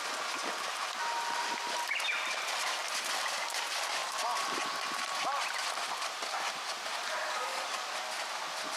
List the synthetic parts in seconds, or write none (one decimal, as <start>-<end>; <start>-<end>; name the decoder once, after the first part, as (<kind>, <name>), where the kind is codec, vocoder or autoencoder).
7.2-7.9 (codec, DAC)